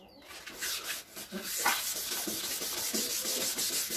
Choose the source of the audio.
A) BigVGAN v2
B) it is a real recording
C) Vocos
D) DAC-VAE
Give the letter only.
B